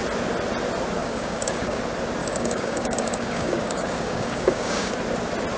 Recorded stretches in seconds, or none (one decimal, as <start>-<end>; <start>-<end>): 0.0-1.0; 1.8-2.2; 4.9-5.6